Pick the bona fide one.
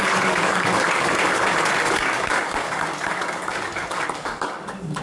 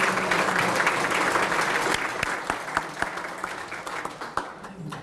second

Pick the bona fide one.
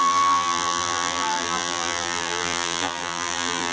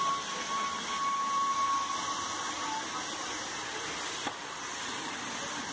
second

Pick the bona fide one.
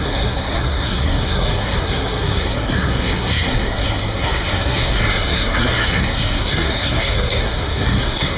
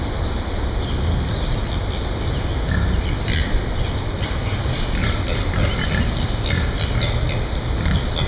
second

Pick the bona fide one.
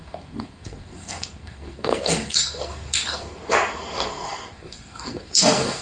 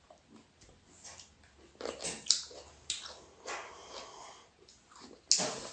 second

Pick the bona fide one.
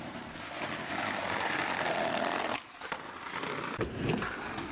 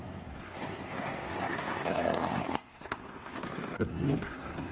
first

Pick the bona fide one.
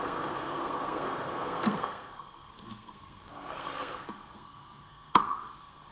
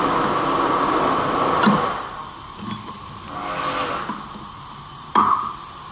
second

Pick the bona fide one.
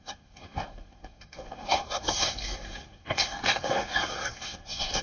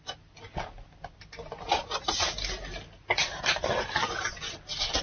second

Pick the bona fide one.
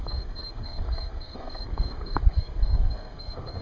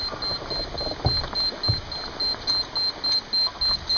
second